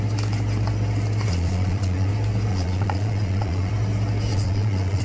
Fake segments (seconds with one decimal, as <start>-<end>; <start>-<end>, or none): 1.3-2.1; 2.5-3.7; 4.3-5.0